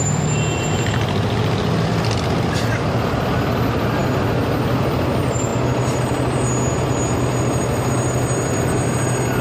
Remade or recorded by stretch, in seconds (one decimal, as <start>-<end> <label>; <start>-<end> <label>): 0.0-9.4 recorded